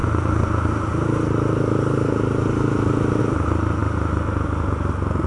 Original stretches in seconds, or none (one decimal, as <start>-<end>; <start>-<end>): 0.0-5.3